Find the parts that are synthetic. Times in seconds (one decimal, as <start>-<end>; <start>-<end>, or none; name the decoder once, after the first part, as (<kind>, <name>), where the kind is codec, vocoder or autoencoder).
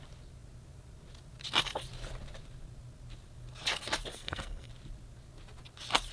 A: 4.1-4.7 (codec, SNAC)